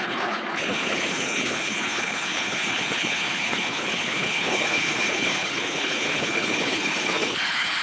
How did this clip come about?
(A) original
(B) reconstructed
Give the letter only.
B